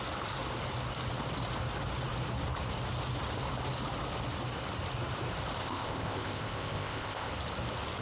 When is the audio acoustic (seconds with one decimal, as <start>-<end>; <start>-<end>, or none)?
0.0-5.6; 7.3-8.0